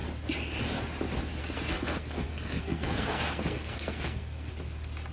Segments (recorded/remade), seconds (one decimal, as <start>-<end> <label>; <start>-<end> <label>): 0.0-1.4 recorded; 1.4-4.5 remade; 4.5-5.1 recorded